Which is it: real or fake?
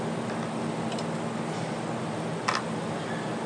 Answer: real